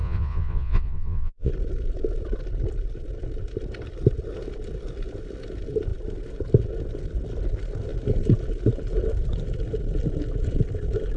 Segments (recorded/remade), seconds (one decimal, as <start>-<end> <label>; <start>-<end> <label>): 0.0-1.5 remade; 1.5-11.2 recorded